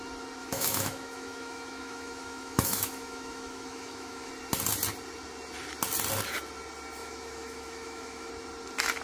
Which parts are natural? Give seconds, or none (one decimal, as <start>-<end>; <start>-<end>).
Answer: 0.0-0.4; 4.3-7.0; 8.3-9.0